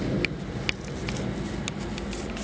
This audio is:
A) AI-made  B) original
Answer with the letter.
B